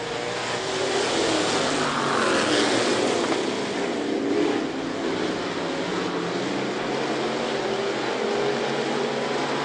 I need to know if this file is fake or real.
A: real